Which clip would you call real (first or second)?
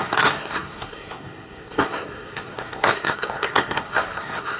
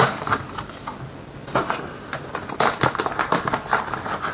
second